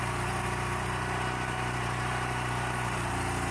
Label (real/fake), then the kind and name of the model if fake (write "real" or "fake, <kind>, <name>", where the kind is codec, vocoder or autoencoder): fake, vocoder, BigVGAN v2